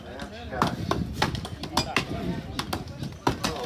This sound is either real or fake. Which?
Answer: real